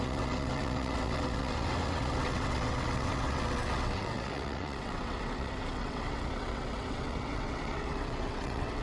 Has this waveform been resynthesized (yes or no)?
yes